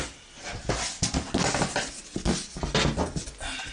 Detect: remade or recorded recorded